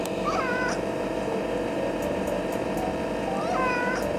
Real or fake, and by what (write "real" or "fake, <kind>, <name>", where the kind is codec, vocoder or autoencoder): fake, vocoder, BigVGAN v2